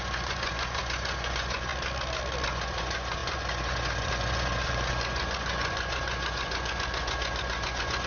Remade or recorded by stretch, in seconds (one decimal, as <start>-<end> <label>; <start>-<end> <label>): 0.0-1.7 remade; 1.7-2.5 recorded; 2.5-8.1 remade